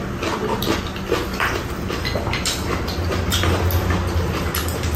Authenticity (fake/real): real